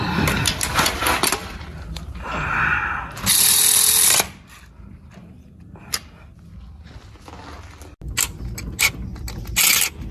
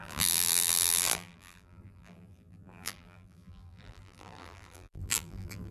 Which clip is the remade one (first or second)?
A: second